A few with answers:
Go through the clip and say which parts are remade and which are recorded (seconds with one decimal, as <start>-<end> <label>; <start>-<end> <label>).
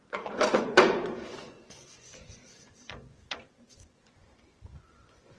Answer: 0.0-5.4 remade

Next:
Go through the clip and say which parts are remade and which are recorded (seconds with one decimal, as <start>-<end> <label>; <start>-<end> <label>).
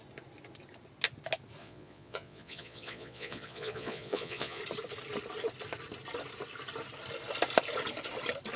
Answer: 0.0-1.6 recorded; 1.6-4.6 remade; 4.6-8.6 recorded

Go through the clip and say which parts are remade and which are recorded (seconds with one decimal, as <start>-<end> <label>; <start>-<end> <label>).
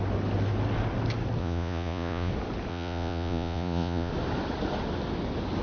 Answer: 0.0-1.4 recorded; 1.4-2.3 remade; 2.3-2.7 recorded; 2.7-4.1 remade; 4.1-5.6 recorded